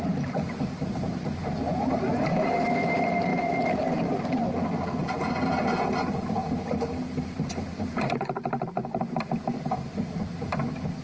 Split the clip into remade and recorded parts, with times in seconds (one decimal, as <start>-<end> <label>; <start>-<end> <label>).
0.0-11.0 remade